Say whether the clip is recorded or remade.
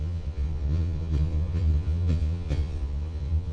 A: remade